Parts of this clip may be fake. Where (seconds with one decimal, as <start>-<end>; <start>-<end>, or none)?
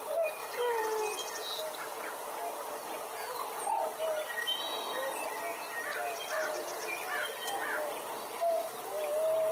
6.0-6.8